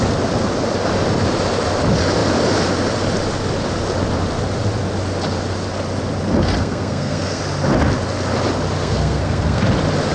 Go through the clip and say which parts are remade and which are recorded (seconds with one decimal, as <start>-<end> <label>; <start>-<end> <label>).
0.0-6.6 recorded; 6.6-7.4 remade; 7.4-8.8 recorded; 8.8-9.6 remade; 9.6-10.1 recorded